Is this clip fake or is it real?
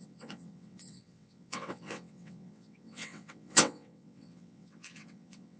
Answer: fake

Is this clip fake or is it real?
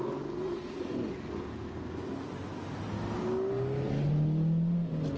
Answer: real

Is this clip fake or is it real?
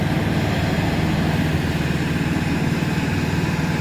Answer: real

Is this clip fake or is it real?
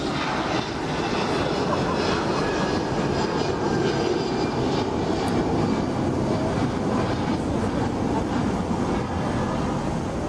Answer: real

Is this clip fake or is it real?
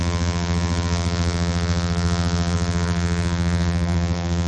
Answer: fake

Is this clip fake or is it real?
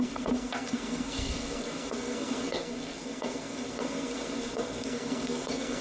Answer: fake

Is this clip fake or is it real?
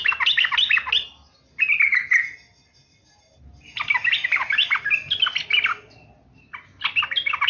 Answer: real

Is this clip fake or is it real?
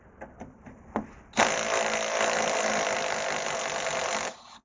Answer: real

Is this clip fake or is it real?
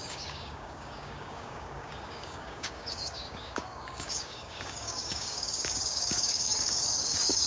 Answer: fake